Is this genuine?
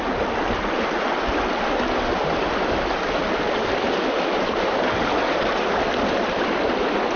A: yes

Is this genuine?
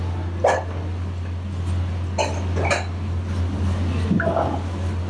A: yes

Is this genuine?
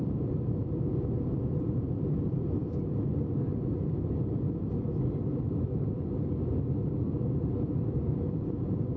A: yes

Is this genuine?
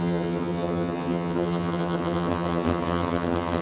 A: no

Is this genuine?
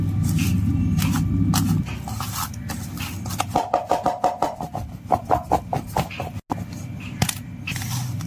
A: yes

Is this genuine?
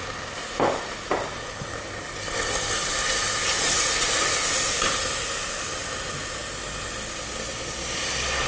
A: yes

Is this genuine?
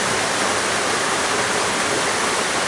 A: yes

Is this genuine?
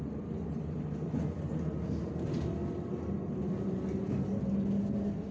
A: yes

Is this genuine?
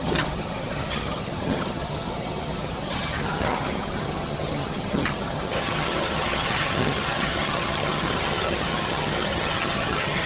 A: no